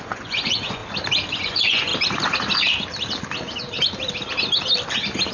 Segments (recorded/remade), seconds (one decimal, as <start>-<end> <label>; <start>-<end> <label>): 0.0-0.8 remade; 0.8-1.3 recorded; 1.3-1.9 remade; 1.9-5.3 recorded

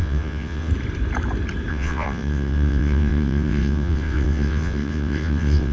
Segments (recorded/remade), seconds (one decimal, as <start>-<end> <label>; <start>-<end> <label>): 0.0-0.7 remade; 0.7-1.7 recorded; 1.7-5.7 remade

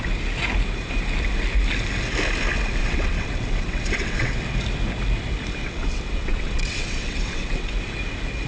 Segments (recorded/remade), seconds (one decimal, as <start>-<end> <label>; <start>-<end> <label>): 0.0-2.8 recorded; 2.8-4.4 remade; 4.4-5.6 recorded; 5.6-7.7 remade; 7.7-8.5 recorded

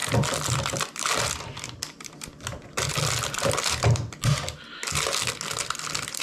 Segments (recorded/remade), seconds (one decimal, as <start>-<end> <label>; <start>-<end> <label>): 0.0-6.2 recorded